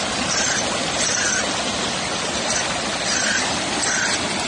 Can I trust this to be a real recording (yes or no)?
no